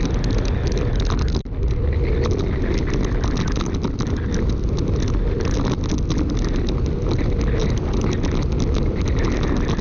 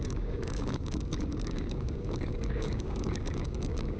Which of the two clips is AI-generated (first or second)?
second